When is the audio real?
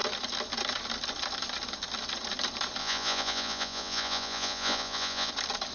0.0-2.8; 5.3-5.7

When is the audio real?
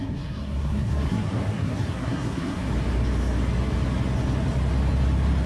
2.7-5.5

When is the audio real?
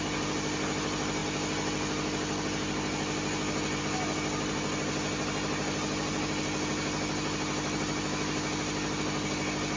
0.0-9.8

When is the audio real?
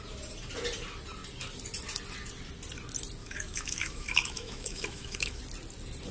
0.0-3.2; 5.4-6.1